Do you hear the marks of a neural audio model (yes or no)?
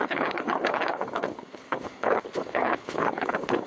yes